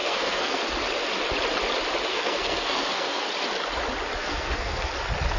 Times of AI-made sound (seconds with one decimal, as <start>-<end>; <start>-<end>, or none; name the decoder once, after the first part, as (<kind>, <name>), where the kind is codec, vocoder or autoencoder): 0.0-0.6 (codec, SNAC); 2.1-3.3; 4.2-4.9